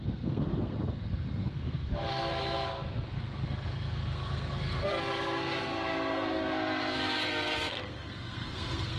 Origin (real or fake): fake